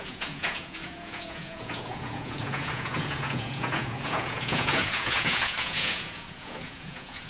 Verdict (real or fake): fake